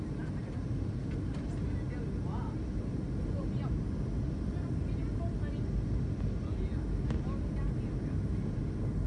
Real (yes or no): yes